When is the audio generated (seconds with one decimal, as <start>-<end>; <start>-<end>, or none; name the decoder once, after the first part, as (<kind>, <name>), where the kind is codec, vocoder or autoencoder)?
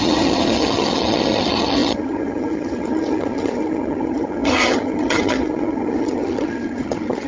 0.0-7.3 (vocoder, HiFi-GAN)